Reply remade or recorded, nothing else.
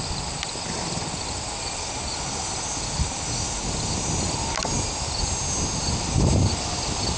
recorded